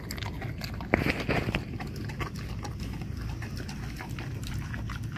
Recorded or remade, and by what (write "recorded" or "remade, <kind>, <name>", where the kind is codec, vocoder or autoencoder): recorded